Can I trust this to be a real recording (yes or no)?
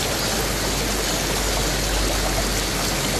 yes